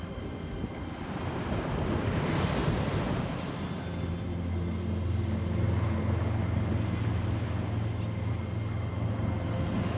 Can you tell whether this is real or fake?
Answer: real